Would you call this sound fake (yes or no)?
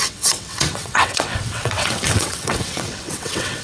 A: yes